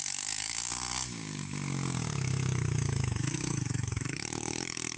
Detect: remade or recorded remade